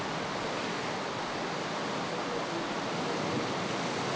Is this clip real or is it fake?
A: real